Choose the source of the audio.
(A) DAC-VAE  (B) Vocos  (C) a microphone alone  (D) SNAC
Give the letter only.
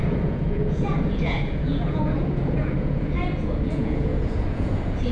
B